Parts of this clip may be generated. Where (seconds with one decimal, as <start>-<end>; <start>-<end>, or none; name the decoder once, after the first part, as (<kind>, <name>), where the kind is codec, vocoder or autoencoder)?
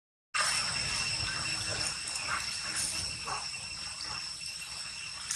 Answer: none